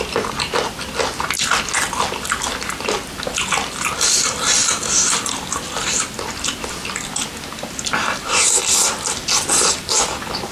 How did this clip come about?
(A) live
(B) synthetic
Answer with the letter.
A